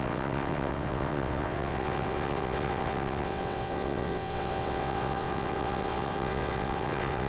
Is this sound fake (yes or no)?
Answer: yes